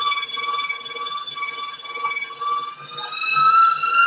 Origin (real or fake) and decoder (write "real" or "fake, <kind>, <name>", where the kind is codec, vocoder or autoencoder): real